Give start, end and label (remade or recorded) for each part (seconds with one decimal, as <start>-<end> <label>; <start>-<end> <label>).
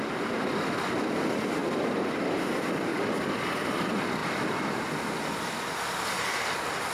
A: 0.0-1.6 recorded; 1.6-2.5 remade; 2.5-6.9 recorded